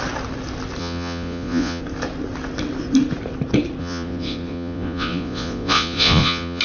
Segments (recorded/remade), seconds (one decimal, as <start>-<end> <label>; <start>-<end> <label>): 0.0-0.8 recorded; 0.8-1.8 remade; 1.8-3.8 recorded; 3.8-6.6 remade